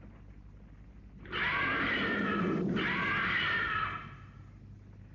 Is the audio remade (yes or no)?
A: no